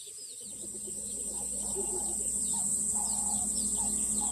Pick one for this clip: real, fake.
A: real